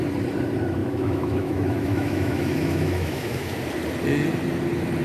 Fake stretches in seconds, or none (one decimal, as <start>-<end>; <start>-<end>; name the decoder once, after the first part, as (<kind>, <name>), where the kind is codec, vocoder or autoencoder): 0.8-3.6 (autoencoder, DAC-VAE)